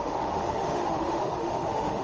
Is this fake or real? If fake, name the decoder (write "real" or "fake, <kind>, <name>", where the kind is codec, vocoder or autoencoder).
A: fake, autoencoder, DAC-VAE